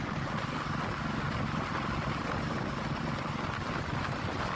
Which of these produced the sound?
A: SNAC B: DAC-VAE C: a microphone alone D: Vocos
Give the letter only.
C